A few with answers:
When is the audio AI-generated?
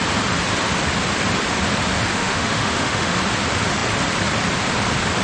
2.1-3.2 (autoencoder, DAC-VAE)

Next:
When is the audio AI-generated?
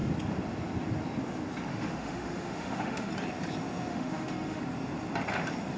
1.7-3.1 (autoencoder, DAC-VAE); 3.9-4.6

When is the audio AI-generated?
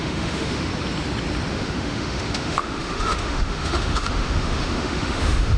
0.0-0.7 (autoencoder, DAC-VAE); 1.5-5.6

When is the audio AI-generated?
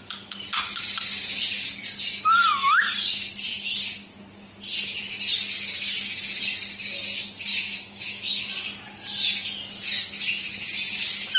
7.5-8.4 (autoencoder, DAC-VAE)